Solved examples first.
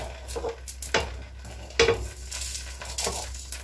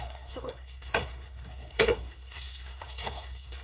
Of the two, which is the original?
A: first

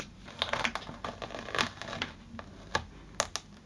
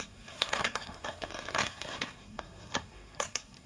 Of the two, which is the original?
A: first